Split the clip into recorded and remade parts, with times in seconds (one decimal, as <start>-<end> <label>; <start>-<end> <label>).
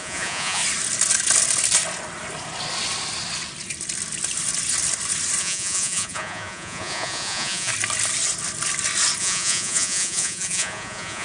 0.0-0.6 remade; 0.6-5.4 recorded; 5.4-7.7 remade; 7.7-9.2 recorded; 9.2-11.2 remade